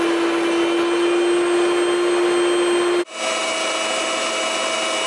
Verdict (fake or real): real